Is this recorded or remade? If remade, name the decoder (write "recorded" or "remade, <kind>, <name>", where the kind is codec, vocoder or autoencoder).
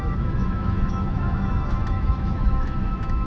remade, autoencoder, DAC-VAE